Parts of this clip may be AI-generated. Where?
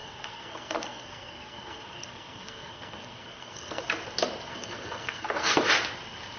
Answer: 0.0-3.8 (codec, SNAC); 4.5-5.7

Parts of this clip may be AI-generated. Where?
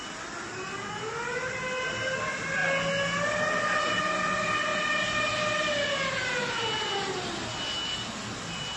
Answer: none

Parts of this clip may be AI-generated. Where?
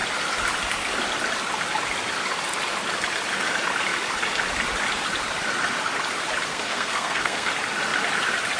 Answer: 6.5-7.5 (codec, SNAC)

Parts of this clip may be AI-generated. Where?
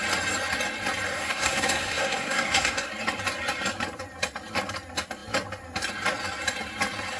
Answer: 1.1-2.9 (codec, SNAC)